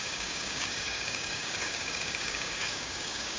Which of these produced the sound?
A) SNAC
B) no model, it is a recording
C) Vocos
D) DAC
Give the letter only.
D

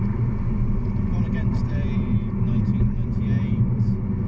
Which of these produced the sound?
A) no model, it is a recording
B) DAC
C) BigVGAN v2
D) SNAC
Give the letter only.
A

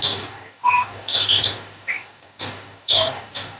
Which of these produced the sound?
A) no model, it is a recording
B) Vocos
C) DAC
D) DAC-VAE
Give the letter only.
C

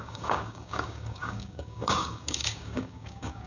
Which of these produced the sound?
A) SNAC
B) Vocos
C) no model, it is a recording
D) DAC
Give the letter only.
D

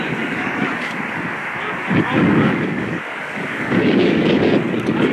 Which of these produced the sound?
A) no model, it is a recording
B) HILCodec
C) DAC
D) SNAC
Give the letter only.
C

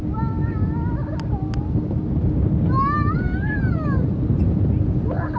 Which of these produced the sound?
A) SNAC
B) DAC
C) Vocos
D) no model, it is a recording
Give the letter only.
D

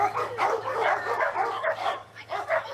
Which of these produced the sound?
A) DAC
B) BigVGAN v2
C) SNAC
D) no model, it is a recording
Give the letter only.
A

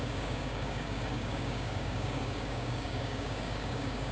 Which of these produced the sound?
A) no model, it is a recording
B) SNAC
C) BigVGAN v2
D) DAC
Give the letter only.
D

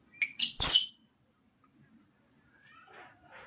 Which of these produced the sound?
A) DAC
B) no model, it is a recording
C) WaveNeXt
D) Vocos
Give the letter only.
B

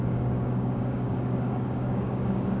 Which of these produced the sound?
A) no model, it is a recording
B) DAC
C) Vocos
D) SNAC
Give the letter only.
B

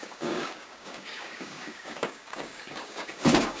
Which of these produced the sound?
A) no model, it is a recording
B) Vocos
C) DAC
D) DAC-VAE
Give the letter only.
C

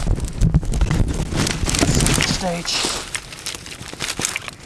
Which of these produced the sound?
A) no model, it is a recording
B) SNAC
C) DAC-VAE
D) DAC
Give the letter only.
A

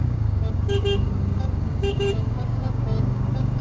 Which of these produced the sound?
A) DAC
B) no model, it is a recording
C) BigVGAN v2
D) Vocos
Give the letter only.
A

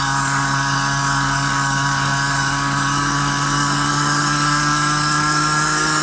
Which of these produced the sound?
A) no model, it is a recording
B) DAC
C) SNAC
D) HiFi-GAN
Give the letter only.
B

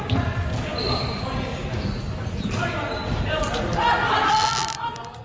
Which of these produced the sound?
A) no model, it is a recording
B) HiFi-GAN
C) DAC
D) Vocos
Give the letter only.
A